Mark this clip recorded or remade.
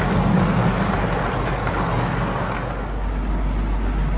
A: recorded